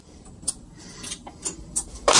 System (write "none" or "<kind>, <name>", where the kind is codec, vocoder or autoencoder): vocoder, BigVGAN v2